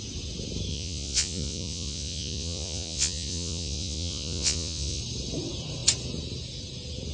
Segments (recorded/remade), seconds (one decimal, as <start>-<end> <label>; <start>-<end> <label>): 0.0-0.7 recorded; 0.7-5.0 remade; 5.0-7.1 recorded